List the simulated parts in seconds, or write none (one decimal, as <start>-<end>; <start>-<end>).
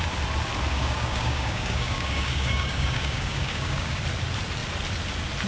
0.7-4.0